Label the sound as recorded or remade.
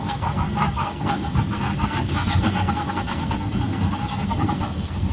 remade